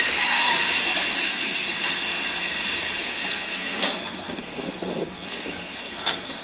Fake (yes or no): yes